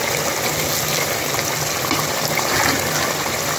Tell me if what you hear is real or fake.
real